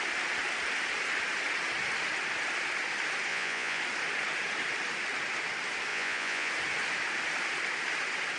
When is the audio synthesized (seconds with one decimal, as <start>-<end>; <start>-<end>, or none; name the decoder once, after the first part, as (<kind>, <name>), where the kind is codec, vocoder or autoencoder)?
3.3-3.8 (vocoder, Vocos); 5.9-6.5